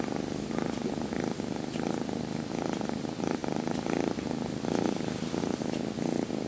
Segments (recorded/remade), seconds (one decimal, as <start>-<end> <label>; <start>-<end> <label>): 0.0-6.5 recorded